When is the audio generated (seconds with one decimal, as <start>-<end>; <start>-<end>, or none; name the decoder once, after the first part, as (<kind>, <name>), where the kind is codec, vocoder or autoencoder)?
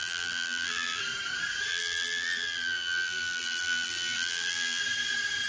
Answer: 0.0-1.0 (vocoder, BigVGAN v2); 1.7-4.8